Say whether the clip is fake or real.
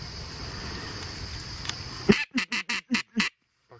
real